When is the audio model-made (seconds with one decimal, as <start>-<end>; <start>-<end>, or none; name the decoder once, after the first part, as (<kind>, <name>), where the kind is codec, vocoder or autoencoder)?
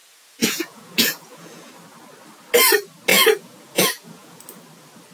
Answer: 0.0-1.7 (vocoder, Vocos); 3.1-4.4